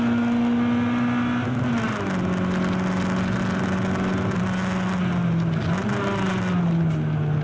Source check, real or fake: real